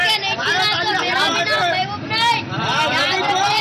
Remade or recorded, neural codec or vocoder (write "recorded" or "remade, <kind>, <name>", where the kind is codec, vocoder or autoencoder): recorded